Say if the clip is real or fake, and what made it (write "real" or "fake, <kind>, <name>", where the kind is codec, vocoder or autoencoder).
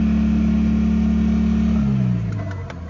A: real